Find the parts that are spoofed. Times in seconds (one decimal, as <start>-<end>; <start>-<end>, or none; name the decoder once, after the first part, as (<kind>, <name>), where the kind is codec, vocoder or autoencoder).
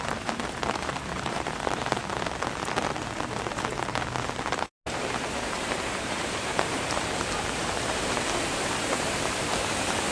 0.0-2.0 (vocoder, BigVGAN v2); 4.9-10.1